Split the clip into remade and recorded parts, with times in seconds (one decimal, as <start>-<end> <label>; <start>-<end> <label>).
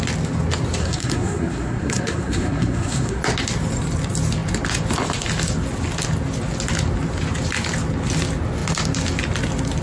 0.0-0.8 recorded; 0.8-3.2 remade; 3.2-9.8 recorded